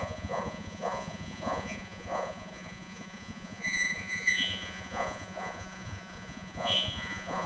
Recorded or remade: remade